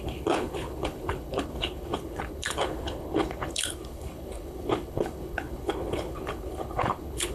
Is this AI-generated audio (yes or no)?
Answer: yes